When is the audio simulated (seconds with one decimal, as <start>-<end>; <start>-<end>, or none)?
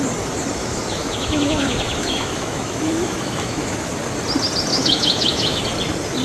0.6-3.9; 4.7-5.6